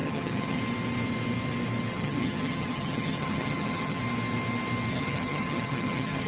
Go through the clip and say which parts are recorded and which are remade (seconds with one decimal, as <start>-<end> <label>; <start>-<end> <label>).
0.0-0.6 remade; 0.6-1.9 recorded; 1.9-4.0 remade; 4.0-4.9 recorded; 4.9-6.3 remade

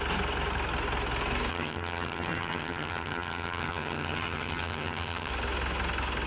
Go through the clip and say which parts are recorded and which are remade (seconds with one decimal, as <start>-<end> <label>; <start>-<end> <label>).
0.0-1.5 recorded; 1.5-5.3 remade; 5.3-6.3 recorded

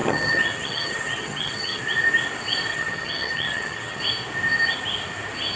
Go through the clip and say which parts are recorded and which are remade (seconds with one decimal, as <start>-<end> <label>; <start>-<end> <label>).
0.0-1.8 remade; 1.8-2.7 recorded; 2.7-4.0 remade; 4.0-5.6 recorded

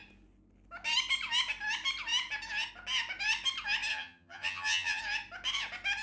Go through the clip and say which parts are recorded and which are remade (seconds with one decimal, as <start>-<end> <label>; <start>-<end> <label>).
0.0-3.9 recorded; 3.9-5.0 remade; 5.0-6.0 recorded

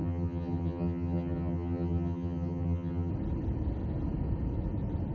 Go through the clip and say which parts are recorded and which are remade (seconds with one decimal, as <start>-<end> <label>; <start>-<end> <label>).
0.0-3.1 remade; 3.1-5.1 recorded

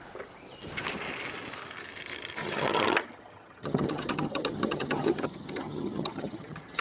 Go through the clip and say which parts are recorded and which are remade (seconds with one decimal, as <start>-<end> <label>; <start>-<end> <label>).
0.0-2.4 recorded; 2.4-6.8 remade

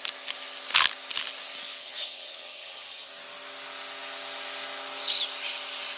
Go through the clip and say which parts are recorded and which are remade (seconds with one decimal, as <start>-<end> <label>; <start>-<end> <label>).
0.0-1.8 recorded; 1.8-3.1 remade; 3.1-6.0 recorded

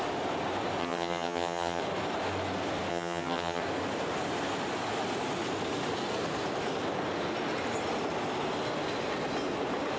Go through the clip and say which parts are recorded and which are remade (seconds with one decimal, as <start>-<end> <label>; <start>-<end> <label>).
0.0-0.8 recorded; 0.8-1.8 remade; 1.8-2.9 recorded; 2.9-3.6 remade; 3.6-10.0 recorded